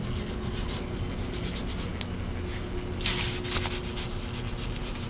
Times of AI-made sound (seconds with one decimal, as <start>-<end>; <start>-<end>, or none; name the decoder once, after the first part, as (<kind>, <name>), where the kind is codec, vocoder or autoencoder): none

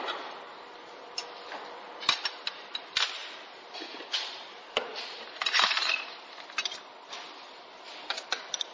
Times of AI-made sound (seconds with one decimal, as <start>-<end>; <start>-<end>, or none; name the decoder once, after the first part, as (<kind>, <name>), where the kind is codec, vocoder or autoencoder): none

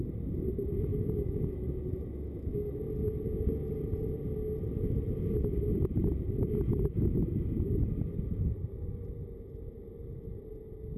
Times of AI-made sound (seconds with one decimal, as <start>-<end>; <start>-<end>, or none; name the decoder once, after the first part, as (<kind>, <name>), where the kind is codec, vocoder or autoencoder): 0.9-2.8 (autoencoder, DAC-VAE)

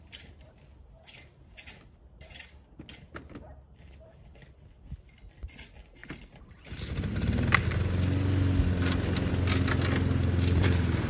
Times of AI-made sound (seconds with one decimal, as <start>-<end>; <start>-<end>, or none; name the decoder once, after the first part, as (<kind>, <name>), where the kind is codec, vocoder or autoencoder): none

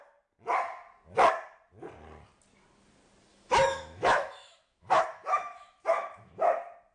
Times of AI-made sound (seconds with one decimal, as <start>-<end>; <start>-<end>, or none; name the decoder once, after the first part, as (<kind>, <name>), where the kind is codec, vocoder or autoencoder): 3.3-6.3 (autoencoder, DAC-VAE)